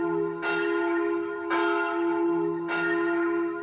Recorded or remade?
remade